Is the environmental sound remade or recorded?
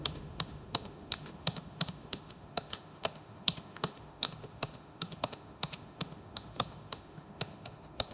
remade